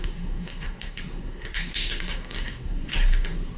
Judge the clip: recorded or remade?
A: remade